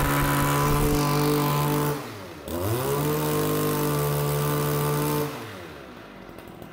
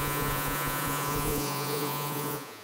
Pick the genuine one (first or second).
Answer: first